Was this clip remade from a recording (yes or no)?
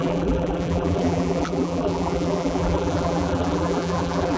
yes